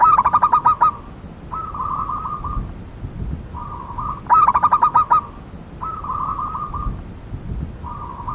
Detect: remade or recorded recorded